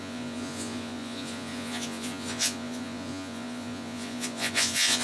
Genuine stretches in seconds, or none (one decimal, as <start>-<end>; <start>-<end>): none